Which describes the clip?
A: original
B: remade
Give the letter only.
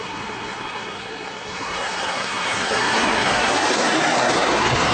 B